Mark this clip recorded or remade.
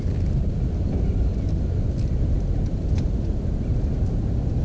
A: recorded